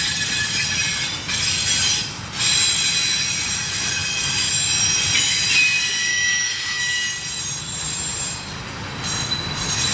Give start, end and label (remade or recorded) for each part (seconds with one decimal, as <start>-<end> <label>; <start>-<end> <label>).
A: 0.0-6.1 recorded; 6.1-6.8 remade; 6.8-9.9 recorded